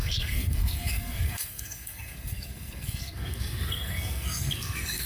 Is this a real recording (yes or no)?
no